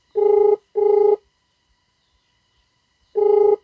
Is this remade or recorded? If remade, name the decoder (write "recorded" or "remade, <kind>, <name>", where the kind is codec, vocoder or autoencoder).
recorded